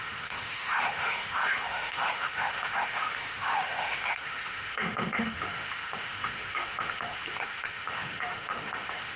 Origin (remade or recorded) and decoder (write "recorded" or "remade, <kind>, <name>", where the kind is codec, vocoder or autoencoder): remade, autoencoder, DAC-VAE